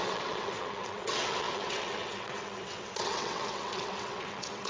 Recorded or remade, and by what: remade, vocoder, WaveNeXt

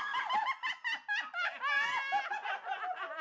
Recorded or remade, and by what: recorded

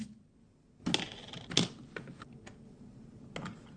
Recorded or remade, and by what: recorded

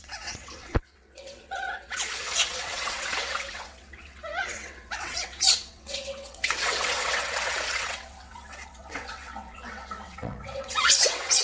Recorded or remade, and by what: remade, vocoder, WaveNeXt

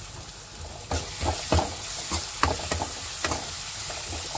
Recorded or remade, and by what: recorded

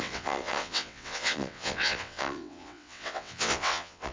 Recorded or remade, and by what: remade, vocoder, WaveNeXt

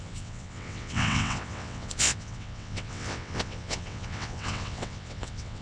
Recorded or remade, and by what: remade, vocoder, WaveNeXt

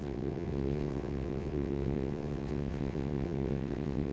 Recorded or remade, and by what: remade, vocoder, WaveNeXt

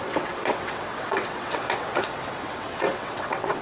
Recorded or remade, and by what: remade, vocoder, WaveNeXt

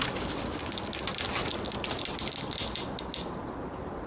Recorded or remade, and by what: recorded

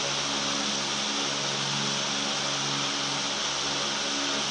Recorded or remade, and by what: recorded